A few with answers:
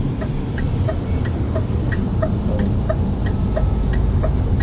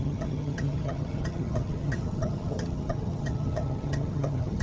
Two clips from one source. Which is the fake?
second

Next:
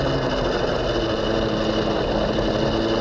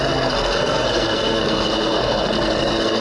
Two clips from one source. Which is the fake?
second